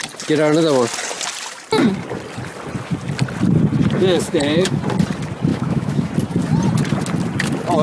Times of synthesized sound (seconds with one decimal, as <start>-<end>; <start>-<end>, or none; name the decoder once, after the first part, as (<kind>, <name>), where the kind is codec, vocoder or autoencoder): 4.0-4.8 (autoencoder, DAC-VAE); 5.5-6.1